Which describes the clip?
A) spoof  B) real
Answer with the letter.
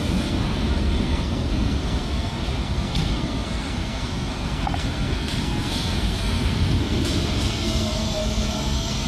A